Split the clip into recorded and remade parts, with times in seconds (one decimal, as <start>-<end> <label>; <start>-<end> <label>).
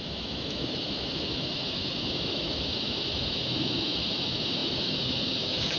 0.0-5.8 remade